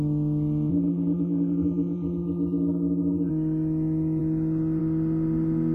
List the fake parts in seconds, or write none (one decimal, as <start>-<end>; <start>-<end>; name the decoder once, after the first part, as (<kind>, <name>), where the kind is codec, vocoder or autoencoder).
0.7-3.3 (vocoder, BigVGAN v2)